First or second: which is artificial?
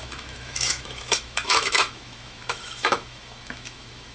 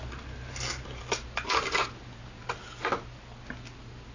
first